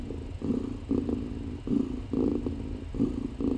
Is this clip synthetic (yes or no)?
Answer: no